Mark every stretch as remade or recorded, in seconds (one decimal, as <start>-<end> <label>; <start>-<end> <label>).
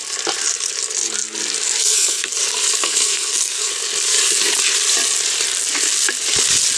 0.0-1.8 recorded; 1.8-2.3 remade; 2.3-2.8 recorded; 2.8-3.7 remade; 3.7-6.8 recorded